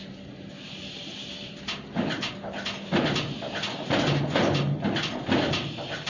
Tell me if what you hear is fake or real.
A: real